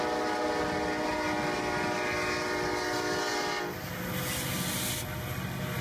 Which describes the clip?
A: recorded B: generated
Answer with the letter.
A